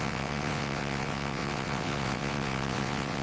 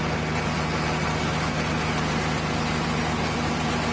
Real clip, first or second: second